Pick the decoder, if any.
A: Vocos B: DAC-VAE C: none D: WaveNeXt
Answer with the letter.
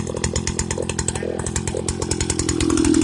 C